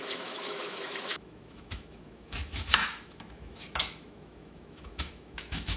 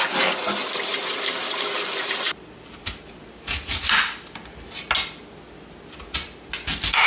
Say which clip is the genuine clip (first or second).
second